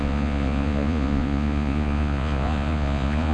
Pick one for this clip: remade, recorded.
remade